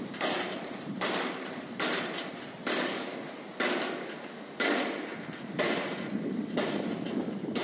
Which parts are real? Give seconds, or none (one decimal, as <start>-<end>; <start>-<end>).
2.3-6.9